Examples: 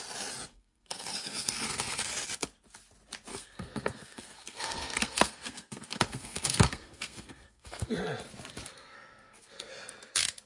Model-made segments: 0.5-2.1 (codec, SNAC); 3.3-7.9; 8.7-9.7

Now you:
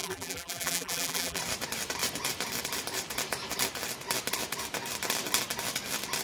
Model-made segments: 0.0-1.4 (vocoder, BigVGAN v2)

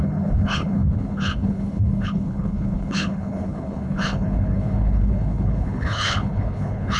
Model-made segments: 0.0-7.0 (codec, HILCodec)